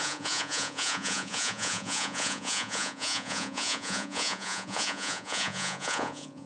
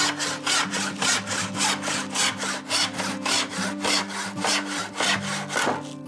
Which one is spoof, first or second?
first